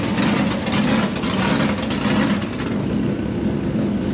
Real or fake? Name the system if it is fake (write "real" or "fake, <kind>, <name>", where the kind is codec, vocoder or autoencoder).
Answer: real